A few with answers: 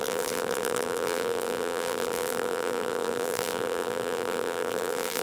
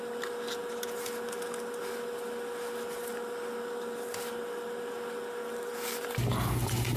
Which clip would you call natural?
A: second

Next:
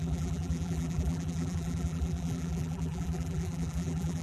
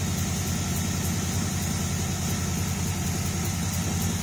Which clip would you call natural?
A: second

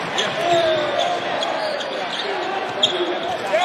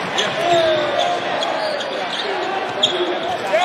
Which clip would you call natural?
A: second